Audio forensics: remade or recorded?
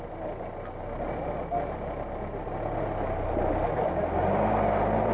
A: recorded